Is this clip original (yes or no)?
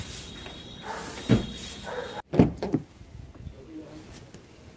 yes